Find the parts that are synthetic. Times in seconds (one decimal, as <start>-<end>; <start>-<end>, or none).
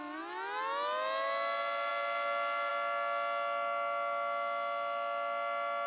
none